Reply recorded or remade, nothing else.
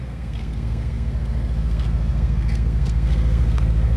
remade